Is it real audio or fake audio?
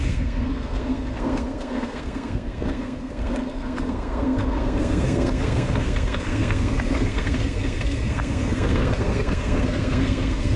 fake